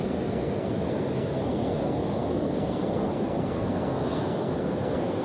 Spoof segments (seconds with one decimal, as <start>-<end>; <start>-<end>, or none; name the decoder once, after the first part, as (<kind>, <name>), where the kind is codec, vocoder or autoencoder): 0.0-5.2 (codec, SNAC)